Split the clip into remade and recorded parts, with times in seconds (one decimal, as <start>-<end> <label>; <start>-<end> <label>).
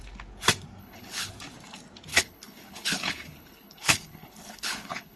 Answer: 0.0-0.8 recorded; 0.8-1.3 remade; 1.3-2.1 recorded; 2.1-5.2 remade